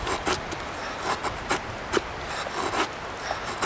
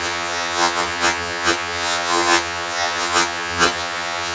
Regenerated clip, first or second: second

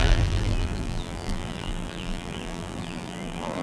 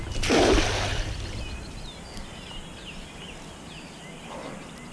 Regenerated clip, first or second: first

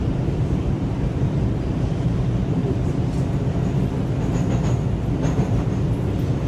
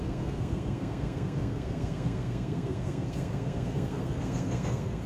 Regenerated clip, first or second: second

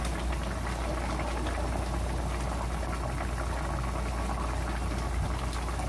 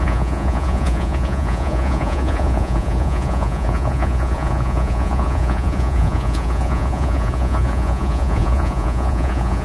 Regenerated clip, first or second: second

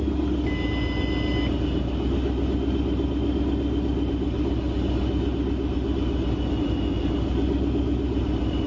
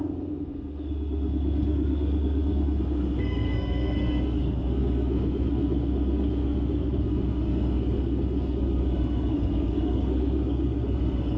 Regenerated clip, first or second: second